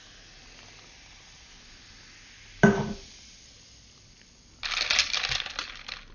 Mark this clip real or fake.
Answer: real